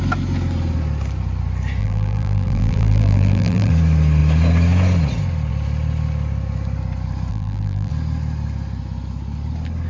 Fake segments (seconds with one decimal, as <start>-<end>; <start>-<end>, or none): 1.8-3.7; 7.3-7.9